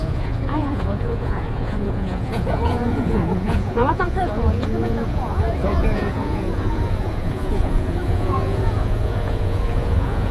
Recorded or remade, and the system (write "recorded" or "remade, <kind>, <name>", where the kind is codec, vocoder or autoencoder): remade, vocoder, Vocos